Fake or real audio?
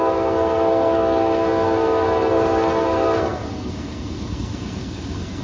fake